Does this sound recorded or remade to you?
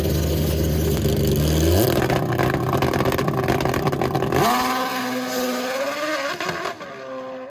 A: recorded